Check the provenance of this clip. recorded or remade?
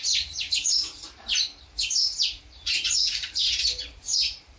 remade